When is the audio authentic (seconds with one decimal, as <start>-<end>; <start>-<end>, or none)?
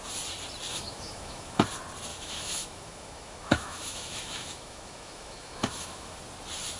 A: 0.0-0.7; 1.6-2.1; 6.2-6.8